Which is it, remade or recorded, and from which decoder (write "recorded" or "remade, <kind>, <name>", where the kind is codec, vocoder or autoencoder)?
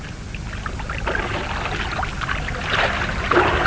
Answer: recorded